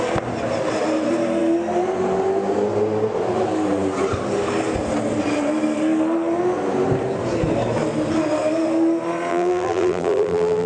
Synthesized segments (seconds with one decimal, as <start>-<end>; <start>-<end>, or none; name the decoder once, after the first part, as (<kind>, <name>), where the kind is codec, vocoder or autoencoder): 9.3-10.7 (vocoder, BigVGAN v2)